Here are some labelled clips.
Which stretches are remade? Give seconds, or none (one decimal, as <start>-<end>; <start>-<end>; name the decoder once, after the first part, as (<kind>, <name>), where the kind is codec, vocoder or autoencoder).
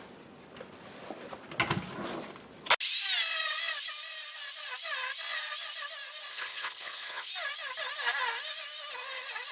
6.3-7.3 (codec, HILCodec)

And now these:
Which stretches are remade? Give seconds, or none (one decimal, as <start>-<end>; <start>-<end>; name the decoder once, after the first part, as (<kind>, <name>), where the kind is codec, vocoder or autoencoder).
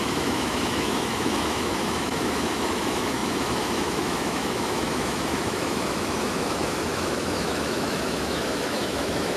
0.0-9.4 (autoencoder, DAC-VAE)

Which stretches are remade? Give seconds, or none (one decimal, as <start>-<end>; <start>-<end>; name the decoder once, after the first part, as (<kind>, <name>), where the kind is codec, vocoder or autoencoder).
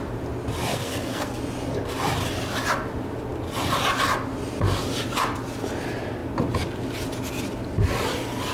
0.7-1.4 (codec, SNAC)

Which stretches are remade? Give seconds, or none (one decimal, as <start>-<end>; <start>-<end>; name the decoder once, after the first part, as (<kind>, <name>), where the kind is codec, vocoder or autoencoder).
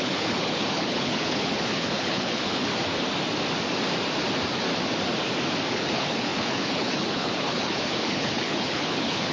0.0-2.7 (codec, HILCodec); 5.7-9.3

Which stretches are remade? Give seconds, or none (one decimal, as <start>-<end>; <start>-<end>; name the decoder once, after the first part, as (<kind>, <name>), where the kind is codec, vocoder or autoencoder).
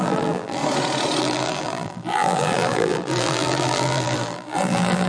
0.0-0.6 (vocoder, BigVGAN v2); 1.2-5.1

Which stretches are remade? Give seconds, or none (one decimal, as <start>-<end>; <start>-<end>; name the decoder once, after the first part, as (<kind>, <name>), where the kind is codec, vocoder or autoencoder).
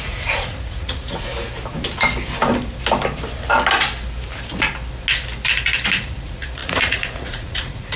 0.0-1.3 (vocoder, Vocos); 6.0-8.0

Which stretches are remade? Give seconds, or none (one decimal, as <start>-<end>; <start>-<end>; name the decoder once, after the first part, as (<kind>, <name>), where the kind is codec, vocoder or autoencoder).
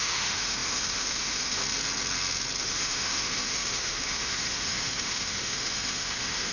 0.0-1.6 (autoencoder, DAC-VAE); 2.6-6.5